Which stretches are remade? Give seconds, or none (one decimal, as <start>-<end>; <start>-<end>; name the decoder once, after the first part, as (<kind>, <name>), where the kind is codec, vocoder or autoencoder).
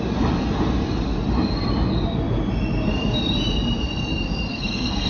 4.5-5.1 (codec, SNAC)